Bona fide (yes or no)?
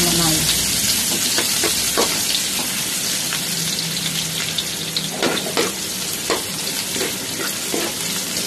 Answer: yes